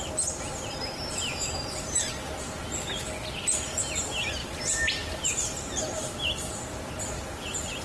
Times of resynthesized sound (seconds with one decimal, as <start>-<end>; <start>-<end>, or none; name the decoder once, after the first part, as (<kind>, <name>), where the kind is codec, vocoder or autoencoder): 4.4-6.9 (vocoder, BigVGAN v2)